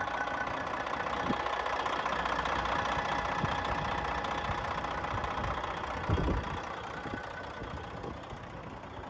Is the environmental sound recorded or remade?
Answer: recorded